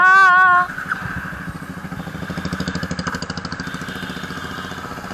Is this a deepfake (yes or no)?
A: no